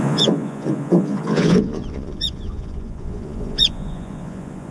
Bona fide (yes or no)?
no